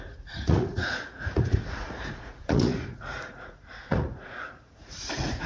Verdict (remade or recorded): remade